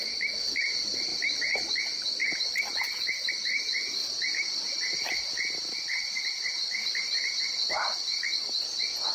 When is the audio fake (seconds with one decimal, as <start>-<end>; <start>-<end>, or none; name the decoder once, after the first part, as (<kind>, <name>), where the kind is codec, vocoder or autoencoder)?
none